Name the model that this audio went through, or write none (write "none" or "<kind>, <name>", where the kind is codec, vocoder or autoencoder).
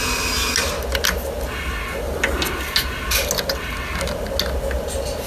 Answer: none